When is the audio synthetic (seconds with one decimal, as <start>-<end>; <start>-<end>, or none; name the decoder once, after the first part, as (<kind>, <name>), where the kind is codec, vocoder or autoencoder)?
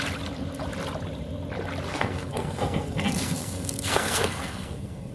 1.9-5.1 (codec, SNAC)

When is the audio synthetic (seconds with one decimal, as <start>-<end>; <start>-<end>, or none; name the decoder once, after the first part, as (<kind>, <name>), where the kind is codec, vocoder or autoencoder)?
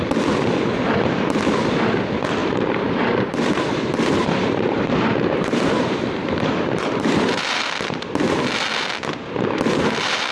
2.4-7.4 (vocoder, BigVGAN v2)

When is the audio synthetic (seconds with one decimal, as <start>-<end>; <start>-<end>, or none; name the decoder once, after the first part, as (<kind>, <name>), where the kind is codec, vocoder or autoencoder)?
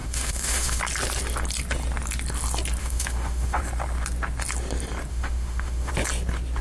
0.0-0.8 (autoencoder, DAC-VAE); 2.8-3.6; 5.1-5.9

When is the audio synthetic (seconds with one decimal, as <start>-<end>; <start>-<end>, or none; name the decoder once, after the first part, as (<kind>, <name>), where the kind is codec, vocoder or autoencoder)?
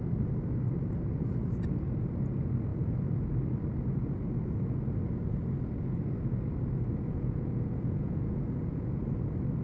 6.9-9.0 (vocoder, Vocos)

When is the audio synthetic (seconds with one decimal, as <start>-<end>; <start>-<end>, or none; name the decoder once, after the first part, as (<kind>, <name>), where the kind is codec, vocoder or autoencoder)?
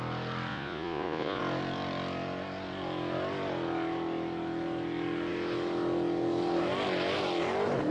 0.5-1.4 (vocoder, Vocos)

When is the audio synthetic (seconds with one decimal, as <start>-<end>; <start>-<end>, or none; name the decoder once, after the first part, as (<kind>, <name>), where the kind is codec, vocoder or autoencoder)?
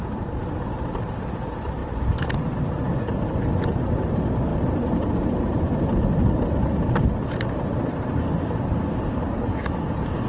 none